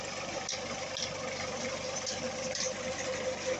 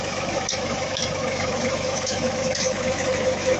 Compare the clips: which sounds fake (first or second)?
second